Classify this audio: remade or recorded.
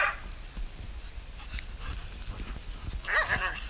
recorded